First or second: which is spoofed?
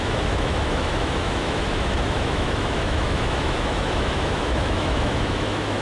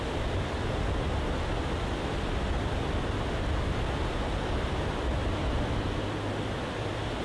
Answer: first